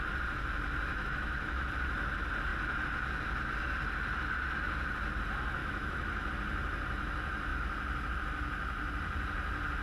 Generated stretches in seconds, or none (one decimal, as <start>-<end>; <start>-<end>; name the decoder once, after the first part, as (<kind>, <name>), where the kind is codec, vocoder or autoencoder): 0.9-1.7 (autoencoder, DAC-VAE); 5.6-6.3